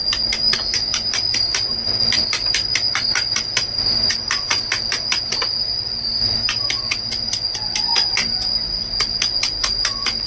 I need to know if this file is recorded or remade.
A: recorded